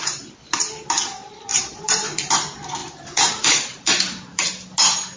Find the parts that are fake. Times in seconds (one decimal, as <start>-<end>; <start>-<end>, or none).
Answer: 1.5-2.3; 2.8-4.4